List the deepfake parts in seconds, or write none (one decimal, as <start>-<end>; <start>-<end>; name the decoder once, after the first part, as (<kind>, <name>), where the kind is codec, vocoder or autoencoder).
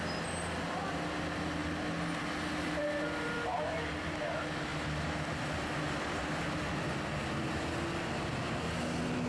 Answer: none